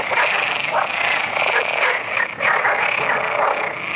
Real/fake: real